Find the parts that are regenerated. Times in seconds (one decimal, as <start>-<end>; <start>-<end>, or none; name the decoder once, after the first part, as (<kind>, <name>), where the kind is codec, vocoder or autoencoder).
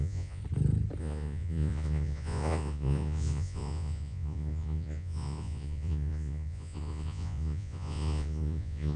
0.0-0.4 (vocoder, Vocos); 1.0-9.0